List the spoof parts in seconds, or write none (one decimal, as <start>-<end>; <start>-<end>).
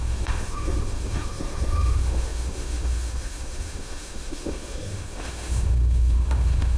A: 0.0-6.8